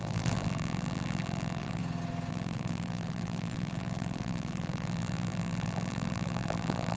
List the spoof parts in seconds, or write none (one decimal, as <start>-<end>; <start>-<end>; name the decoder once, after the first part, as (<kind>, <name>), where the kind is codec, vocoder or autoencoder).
0.0-1.8 (vocoder, BigVGAN v2); 2.3-7.0

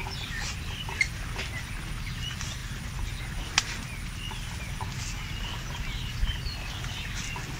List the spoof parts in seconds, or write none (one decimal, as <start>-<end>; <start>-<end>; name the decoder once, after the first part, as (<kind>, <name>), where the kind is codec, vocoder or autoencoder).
none

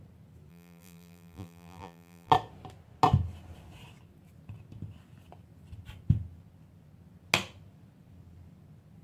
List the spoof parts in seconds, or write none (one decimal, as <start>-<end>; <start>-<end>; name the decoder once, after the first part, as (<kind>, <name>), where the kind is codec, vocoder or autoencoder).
0.5-2.3 (vocoder, BigVGAN v2)

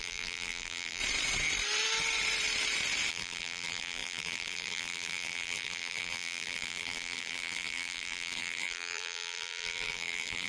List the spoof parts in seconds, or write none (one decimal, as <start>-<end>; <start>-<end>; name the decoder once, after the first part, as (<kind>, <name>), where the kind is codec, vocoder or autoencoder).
0.0-1.0 (vocoder, BigVGAN v2); 3.1-10.5

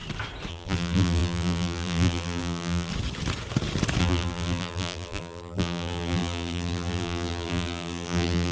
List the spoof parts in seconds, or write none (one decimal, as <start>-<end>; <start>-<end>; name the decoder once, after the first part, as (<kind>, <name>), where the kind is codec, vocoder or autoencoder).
0.5-2.9 (vocoder, BigVGAN v2); 4.0-8.5

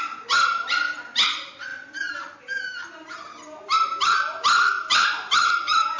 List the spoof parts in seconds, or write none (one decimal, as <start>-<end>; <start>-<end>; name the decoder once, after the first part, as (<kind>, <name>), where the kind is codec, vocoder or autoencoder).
1.7-4.1 (vocoder, BigVGAN v2); 5.4-6.0

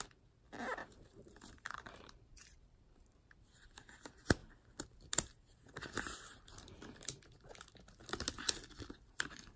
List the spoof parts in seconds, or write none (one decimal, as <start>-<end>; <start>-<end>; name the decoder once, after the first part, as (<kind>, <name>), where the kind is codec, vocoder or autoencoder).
0.8-3.3 (vocoder, BigVGAN v2)

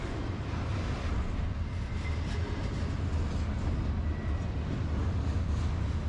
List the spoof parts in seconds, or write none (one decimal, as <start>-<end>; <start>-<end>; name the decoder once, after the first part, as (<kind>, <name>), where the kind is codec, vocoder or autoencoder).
0.0-0.7 (vocoder, BigVGAN v2); 4.2-5.0